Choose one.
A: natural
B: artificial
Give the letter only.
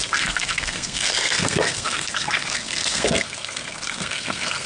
B